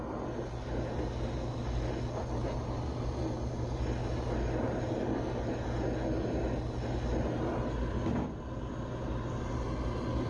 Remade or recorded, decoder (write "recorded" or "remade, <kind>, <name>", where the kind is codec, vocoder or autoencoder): recorded